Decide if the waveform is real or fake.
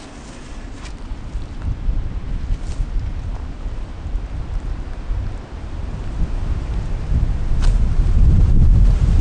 real